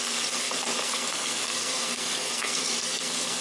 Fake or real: fake